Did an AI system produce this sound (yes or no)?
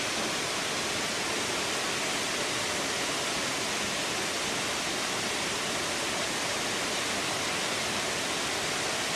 no